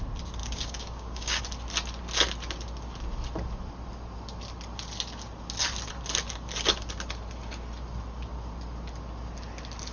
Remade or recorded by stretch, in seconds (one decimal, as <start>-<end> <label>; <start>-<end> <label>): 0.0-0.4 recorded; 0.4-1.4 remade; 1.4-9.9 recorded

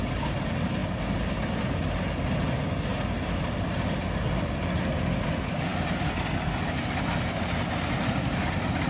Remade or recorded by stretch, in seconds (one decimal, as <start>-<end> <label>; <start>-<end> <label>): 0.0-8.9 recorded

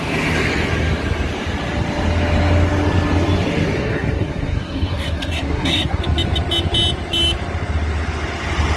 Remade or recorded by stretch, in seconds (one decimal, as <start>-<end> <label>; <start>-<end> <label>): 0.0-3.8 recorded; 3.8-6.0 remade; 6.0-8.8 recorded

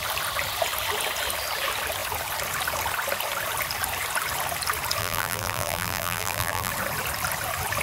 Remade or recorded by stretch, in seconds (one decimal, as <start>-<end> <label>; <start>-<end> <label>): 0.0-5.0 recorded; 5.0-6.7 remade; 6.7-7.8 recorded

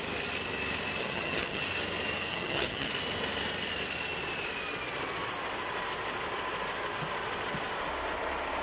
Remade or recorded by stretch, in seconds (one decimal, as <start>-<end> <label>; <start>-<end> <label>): 0.0-1.0 recorded; 1.0-1.6 remade; 1.6-2.3 recorded; 2.3-2.9 remade; 2.9-8.6 recorded

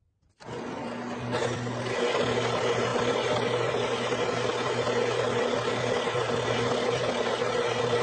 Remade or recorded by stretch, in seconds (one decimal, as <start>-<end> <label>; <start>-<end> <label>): 0.0-8.0 recorded

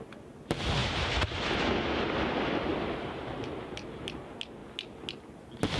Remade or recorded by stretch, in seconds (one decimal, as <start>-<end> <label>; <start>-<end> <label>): 0.0-2.7 recorded; 2.7-3.5 remade; 3.5-5.8 recorded